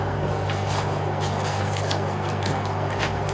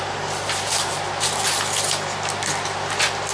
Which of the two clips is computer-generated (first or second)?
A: first